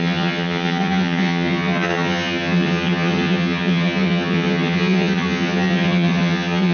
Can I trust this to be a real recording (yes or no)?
no